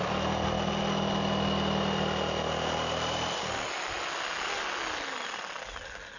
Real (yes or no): yes